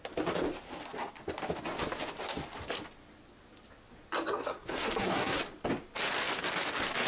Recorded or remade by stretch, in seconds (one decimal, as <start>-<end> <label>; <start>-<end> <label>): 0.0-4.3 recorded; 4.3-5.4 remade; 5.4-7.1 recorded